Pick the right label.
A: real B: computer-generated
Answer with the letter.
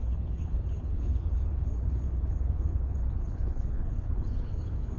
B